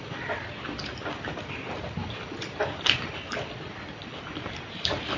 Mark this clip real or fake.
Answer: real